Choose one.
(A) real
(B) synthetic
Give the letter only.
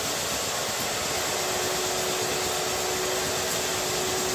A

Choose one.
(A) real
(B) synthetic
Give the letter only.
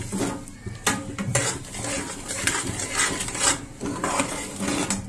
A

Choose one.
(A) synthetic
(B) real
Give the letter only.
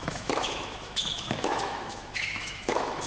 A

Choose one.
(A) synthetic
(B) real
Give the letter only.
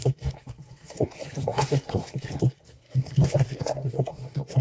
A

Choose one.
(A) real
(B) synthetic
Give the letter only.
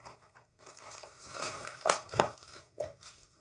B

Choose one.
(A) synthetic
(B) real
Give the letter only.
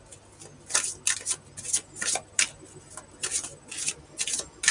B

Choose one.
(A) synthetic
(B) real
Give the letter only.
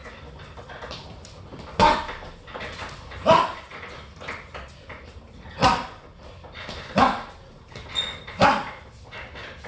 B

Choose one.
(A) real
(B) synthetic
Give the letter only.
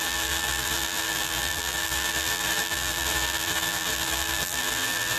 B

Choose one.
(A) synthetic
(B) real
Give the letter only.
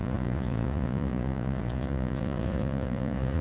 A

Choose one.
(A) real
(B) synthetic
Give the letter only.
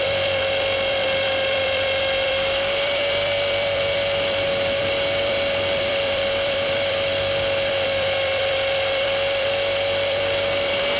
B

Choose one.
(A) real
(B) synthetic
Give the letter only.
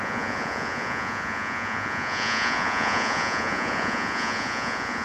B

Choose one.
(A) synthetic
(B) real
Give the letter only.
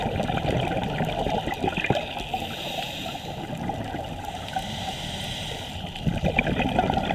B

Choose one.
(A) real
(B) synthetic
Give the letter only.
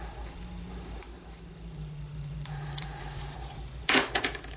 B